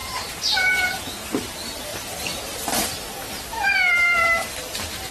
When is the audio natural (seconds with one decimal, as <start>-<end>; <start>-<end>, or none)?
1.0-1.9